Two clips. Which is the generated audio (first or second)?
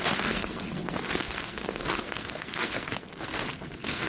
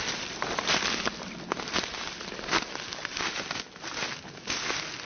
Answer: first